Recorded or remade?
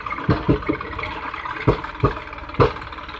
recorded